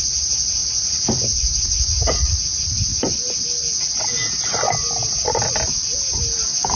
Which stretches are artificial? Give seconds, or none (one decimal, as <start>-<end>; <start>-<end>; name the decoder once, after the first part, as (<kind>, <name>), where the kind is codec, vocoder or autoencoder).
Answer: 0.0-2.9 (vocoder, BigVGAN v2); 4.4-6.8